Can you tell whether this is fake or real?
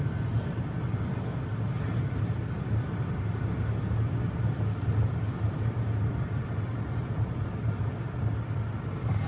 real